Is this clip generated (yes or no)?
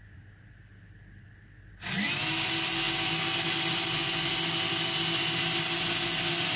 no